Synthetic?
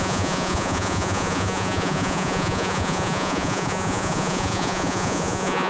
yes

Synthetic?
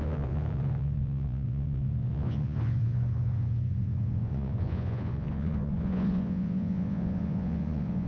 yes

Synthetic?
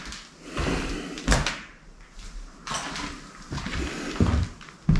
no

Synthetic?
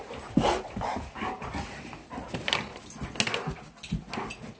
no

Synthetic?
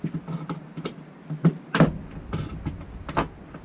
no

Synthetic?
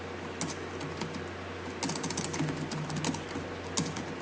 no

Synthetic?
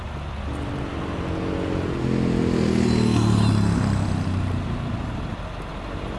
no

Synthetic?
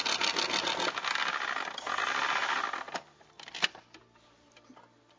no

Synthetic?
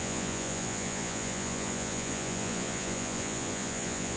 yes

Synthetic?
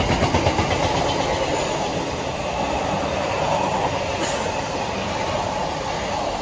no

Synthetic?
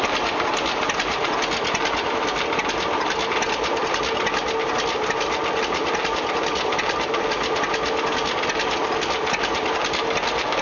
no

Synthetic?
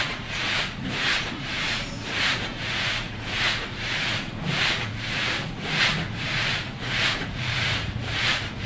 yes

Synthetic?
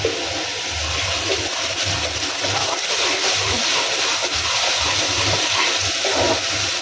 no